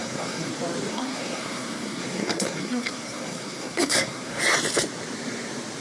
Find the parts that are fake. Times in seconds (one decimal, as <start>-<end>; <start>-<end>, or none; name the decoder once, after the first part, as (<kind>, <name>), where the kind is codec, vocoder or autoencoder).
0.0-0.5 (codec, SNAC); 0.9-4.4